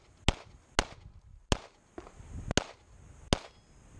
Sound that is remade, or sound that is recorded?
recorded